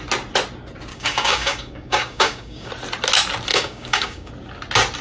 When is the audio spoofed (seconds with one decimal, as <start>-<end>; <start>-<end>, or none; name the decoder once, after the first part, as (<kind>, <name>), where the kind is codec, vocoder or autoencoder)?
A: 0.9-2.7 (codec, DAC); 3.5-4.3